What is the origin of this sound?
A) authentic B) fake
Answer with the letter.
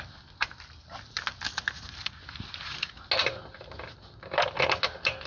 A